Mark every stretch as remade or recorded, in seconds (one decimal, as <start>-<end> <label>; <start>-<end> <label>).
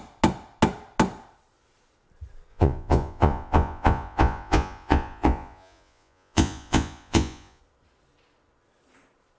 0.0-2.5 recorded; 2.5-7.6 remade; 7.6-9.4 recorded